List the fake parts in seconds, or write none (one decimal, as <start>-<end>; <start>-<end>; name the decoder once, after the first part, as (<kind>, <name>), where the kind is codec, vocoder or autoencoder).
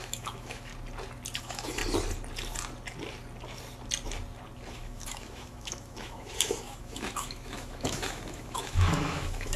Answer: 0.0-0.7 (autoencoder, DAC-VAE); 1.4-1.8; 4.7-9.6